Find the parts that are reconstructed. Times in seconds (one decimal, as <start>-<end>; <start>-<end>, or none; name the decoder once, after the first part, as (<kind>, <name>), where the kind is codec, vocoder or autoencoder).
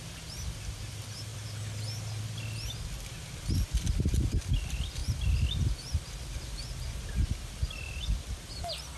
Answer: none